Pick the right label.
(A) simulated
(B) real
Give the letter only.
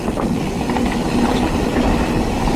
B